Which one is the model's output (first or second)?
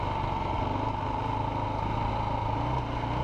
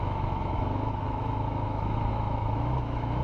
second